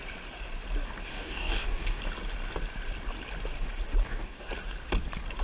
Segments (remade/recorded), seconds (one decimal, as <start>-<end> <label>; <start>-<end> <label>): 0.0-1.1 recorded; 1.1-2.0 remade; 2.0-4.0 recorded; 4.0-4.5 remade; 4.5-5.4 recorded